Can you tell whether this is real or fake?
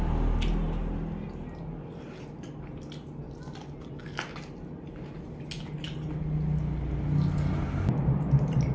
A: real